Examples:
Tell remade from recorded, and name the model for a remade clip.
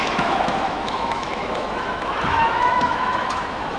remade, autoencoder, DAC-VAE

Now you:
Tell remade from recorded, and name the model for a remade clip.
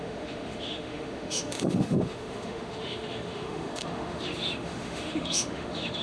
remade, autoencoder, DAC-VAE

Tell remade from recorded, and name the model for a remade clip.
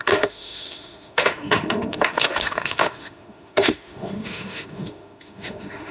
remade, autoencoder, DAC-VAE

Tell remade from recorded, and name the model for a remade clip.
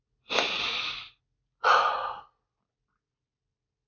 recorded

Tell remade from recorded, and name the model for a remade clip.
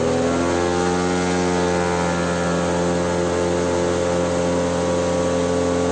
recorded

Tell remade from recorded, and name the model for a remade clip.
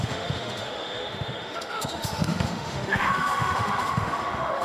remade, autoencoder, DAC-VAE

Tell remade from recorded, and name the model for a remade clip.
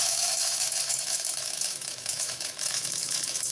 remade, autoencoder, DAC-VAE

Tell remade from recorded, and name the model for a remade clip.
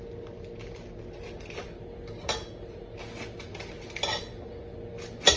recorded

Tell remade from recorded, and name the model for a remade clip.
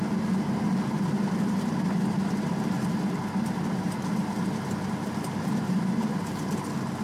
recorded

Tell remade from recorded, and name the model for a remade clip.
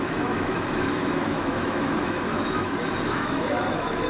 remade, autoencoder, DAC-VAE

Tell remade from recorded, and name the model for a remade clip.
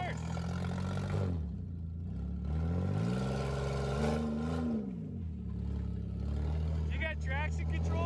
recorded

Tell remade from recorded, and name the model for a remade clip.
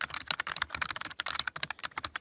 recorded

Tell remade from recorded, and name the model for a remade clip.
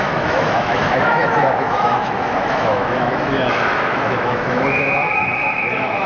remade, autoencoder, DAC-VAE